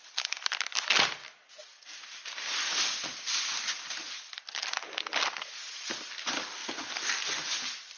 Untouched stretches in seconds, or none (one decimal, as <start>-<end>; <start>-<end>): 0.0-8.0